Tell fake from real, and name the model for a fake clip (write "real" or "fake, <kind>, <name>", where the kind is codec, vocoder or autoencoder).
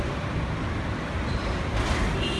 real